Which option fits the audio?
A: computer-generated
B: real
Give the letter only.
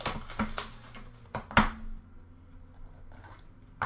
B